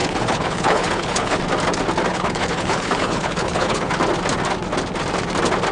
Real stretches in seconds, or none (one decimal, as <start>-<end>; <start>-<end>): 1.4-2.1; 3.9-5.7